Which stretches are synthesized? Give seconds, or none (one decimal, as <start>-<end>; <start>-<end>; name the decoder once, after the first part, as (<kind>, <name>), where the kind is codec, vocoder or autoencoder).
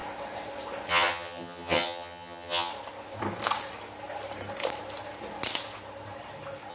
0.9-2.7 (vocoder, HiFi-GAN)